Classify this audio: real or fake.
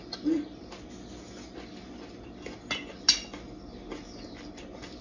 real